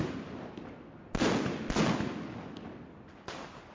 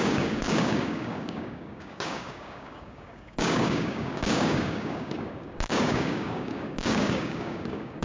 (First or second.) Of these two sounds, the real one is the first